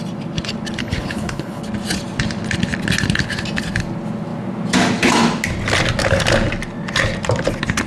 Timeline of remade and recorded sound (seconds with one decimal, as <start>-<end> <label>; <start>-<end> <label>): 0.0-0.8 recorded; 0.8-1.6 remade; 1.6-7.9 recorded